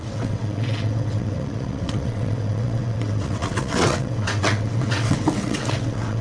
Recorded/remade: remade